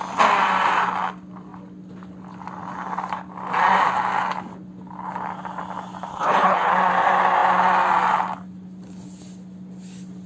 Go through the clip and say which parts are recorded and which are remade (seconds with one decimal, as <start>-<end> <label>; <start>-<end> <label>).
0.0-6.1 recorded; 6.1-6.7 remade; 6.7-10.3 recorded